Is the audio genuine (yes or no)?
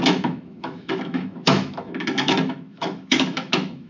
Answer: no